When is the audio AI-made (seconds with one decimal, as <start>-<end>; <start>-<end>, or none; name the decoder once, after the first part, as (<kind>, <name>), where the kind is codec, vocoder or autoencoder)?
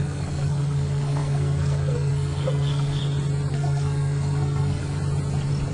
0.0-3.0 (codec, SNAC); 3.5-4.8